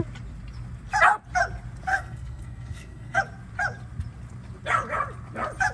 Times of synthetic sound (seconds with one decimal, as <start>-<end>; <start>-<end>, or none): 1.9-3.2